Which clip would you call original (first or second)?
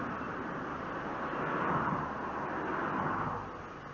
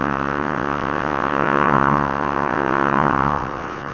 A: first